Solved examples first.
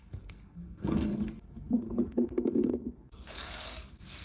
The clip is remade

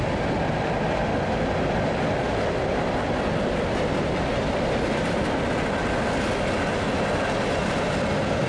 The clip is recorded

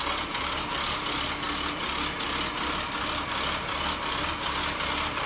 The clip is recorded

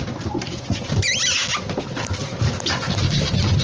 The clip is recorded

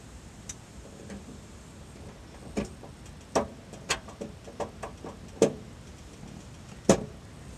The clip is recorded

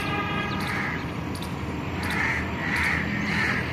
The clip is recorded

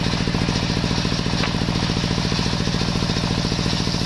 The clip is recorded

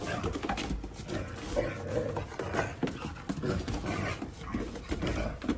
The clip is recorded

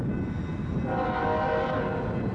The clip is recorded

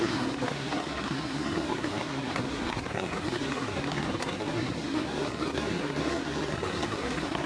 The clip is remade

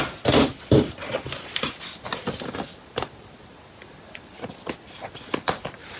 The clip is recorded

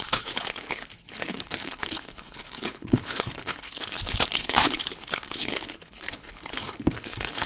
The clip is remade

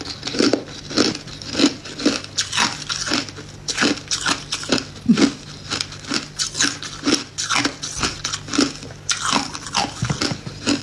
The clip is recorded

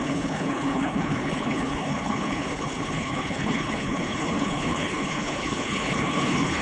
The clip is remade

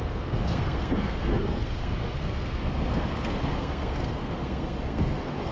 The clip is remade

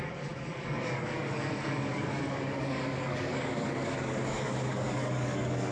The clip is remade